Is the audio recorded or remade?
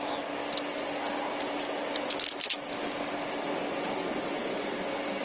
recorded